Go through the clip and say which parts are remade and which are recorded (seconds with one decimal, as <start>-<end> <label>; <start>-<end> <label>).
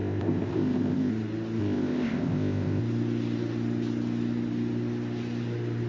0.0-1.1 remade; 1.1-1.6 recorded; 1.6-2.8 remade; 2.8-5.9 recorded